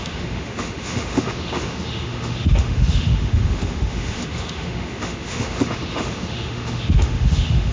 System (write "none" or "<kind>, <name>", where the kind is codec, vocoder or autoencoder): autoencoder, DAC-VAE